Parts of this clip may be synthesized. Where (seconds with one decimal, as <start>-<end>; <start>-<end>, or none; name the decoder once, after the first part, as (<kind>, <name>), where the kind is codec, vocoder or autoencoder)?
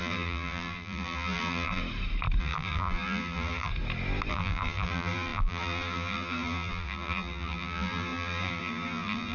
0.0-1.8 (vocoder, BigVGAN v2); 2.4-3.7; 4.3-9.3